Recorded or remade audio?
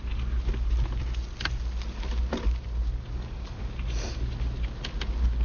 recorded